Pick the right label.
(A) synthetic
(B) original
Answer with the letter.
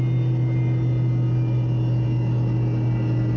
B